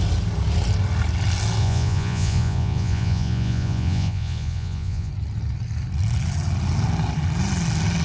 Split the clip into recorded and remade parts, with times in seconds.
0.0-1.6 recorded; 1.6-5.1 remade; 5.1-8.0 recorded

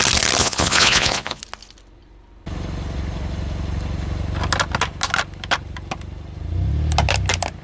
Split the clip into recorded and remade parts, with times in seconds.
0.0-0.4 recorded; 0.4-1.4 remade; 1.4-7.6 recorded

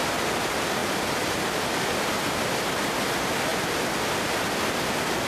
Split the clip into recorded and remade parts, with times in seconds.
0.0-5.3 recorded

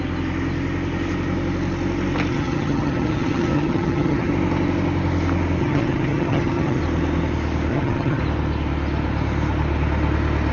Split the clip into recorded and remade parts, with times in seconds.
0.0-2.3 recorded; 2.3-4.3 remade; 4.3-5.6 recorded; 5.6-6.8 remade; 6.8-7.7 recorded; 7.7-8.2 remade; 8.2-10.5 recorded

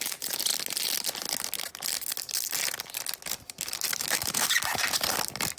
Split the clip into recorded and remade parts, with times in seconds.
0.0-3.9 recorded; 3.9-4.5 remade; 4.5-5.6 recorded

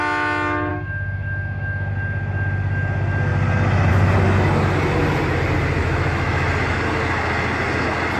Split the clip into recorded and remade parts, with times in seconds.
0.0-0.7 recorded; 0.7-1.9 remade; 1.9-5.8 recorded; 5.8-6.5 remade; 6.5-8.2 recorded

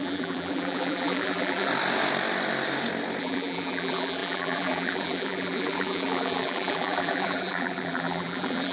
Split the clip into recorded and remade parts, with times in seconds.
0.0-1.7 remade; 1.7-3.2 recorded; 3.2-8.7 remade